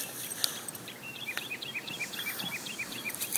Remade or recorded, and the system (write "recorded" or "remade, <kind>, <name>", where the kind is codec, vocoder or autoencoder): remade, vocoder, BigVGAN v2